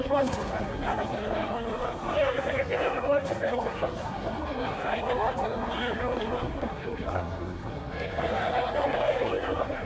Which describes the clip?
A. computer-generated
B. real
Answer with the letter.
A